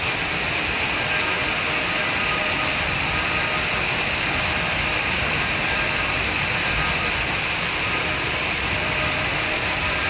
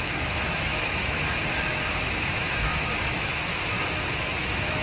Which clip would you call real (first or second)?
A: first